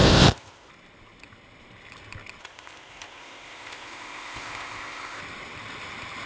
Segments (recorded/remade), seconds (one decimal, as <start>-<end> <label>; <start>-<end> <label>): 0.0-0.7 remade; 0.7-2.4 recorded; 2.4-5.2 remade; 5.2-6.3 recorded